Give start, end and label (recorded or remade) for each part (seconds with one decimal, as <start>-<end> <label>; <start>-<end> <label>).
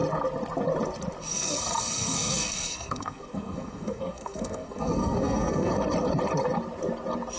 0.0-1.3 recorded; 1.3-5.7 remade; 5.7-7.4 recorded